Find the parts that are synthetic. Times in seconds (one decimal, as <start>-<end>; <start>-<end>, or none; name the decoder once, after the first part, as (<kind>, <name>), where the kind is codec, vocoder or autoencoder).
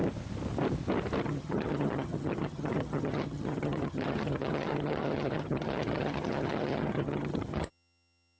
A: 1.2-8.4 (vocoder, HiFi-GAN)